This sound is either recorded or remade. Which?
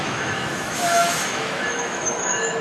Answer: remade